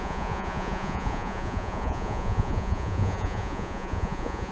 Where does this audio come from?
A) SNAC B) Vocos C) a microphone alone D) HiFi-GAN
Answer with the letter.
B